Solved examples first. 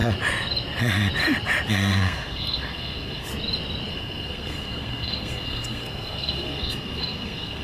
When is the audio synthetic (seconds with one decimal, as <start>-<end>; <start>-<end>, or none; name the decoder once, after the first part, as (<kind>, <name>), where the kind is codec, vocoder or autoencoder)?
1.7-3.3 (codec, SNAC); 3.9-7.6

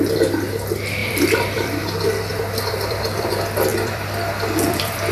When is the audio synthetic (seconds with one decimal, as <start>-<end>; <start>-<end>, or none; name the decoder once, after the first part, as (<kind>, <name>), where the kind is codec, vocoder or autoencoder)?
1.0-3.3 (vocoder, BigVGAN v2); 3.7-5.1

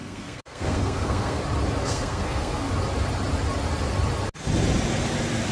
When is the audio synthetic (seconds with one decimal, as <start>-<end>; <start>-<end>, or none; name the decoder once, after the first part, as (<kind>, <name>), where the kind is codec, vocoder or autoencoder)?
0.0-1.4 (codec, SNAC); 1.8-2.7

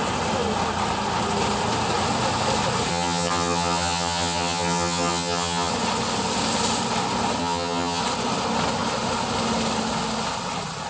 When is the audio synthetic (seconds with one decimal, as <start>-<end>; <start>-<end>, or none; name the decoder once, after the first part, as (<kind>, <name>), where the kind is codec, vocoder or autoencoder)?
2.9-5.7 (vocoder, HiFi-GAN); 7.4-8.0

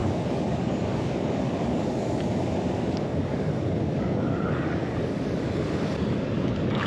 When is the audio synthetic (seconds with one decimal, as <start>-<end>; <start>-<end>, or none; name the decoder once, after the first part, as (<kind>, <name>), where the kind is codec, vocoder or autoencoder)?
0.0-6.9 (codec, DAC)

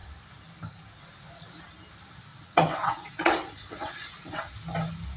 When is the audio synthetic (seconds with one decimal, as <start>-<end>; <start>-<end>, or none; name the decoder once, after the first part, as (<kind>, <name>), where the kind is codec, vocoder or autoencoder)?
2.3-4.5 (vocoder, WaveNeXt)

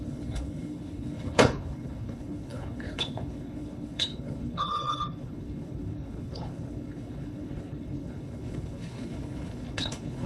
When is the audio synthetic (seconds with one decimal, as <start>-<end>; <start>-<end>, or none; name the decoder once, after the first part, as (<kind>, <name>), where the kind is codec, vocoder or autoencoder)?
0.0-10.3 (codec, HILCodec)

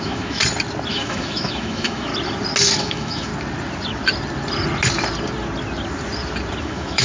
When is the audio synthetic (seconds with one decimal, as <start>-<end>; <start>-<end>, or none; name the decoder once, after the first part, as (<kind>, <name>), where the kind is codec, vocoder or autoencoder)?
0.0-0.4 (autoencoder, DAC-VAE); 0.9-2.1; 2.8-3.3; 6.6-7.0